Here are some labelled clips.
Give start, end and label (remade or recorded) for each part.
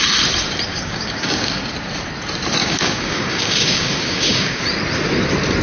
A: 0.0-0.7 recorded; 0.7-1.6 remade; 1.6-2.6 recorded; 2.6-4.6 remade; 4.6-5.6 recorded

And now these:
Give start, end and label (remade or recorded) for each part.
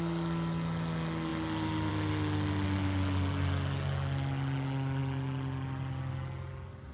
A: 0.0-6.9 recorded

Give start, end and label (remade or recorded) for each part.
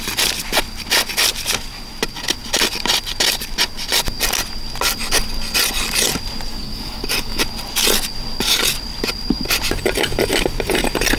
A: 0.0-6.5 recorded; 6.5-7.4 remade; 7.4-11.2 recorded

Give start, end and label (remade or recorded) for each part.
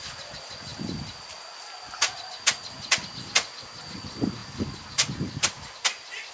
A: 0.0-6.3 recorded